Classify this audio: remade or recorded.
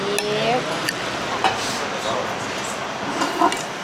recorded